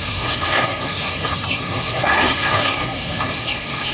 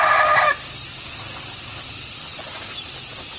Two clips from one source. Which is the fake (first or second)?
first